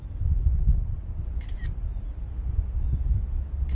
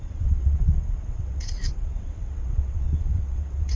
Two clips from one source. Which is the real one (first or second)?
first